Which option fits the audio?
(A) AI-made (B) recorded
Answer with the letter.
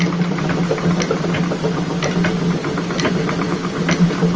B